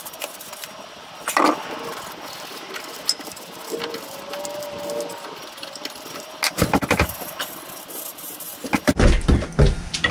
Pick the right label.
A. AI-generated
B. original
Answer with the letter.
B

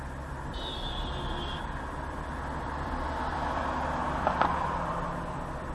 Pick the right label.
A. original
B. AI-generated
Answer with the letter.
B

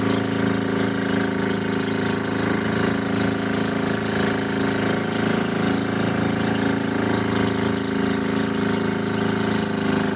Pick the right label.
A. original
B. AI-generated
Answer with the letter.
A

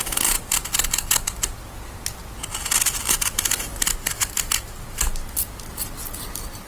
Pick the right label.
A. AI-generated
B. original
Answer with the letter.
B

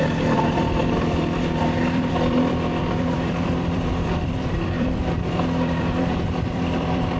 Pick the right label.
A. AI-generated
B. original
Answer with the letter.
A